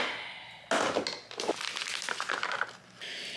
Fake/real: real